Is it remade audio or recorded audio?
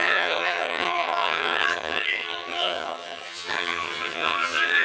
remade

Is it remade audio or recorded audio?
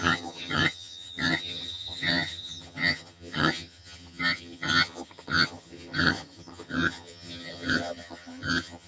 remade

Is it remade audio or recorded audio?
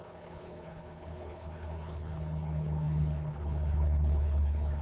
remade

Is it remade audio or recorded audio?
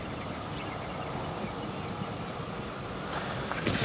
remade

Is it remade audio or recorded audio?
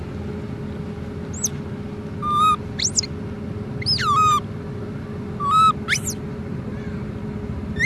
recorded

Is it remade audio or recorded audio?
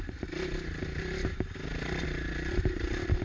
recorded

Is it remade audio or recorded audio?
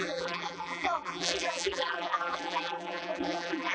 remade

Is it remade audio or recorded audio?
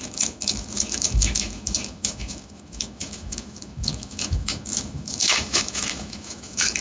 remade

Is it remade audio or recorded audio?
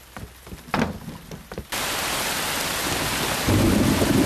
recorded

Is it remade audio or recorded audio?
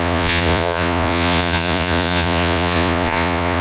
remade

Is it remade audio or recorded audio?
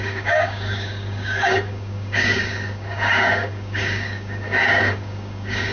remade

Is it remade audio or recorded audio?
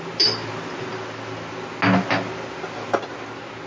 recorded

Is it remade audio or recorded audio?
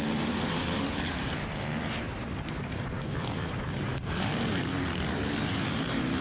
remade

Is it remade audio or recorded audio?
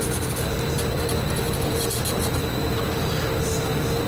recorded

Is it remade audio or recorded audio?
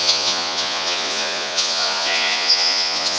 remade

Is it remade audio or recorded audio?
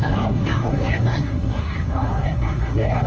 remade